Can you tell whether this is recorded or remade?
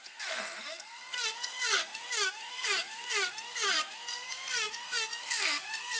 remade